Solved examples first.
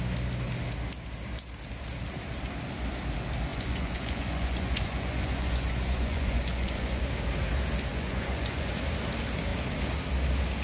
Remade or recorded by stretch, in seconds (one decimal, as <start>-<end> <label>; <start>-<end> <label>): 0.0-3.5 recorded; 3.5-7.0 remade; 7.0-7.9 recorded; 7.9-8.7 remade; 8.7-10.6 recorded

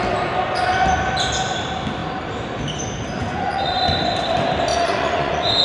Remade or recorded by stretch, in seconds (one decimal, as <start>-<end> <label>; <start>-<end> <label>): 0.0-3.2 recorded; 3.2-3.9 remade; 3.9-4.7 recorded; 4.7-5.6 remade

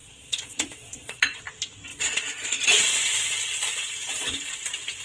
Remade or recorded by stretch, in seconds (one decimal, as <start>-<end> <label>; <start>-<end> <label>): 0.0-1.4 remade; 1.4-1.9 recorded; 1.9-4.5 remade; 4.5-5.0 recorded

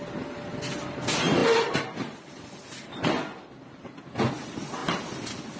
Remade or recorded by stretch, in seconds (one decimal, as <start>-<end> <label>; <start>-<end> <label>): 0.0-5.6 recorded